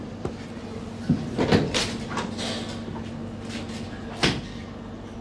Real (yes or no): yes